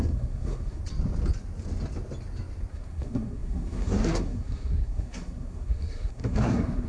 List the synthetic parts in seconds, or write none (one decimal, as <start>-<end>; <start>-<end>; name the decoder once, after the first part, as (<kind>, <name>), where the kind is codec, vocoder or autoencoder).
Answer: 0.0-0.8 (codec, SNAC); 2.7-6.9